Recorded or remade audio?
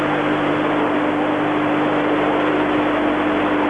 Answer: recorded